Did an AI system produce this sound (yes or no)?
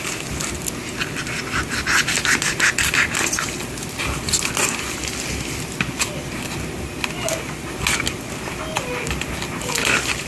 no